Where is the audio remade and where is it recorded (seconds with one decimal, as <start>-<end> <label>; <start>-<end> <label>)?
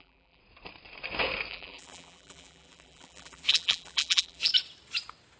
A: 0.0-0.4 remade; 0.4-1.5 recorded; 1.5-4.5 remade; 4.5-5.4 recorded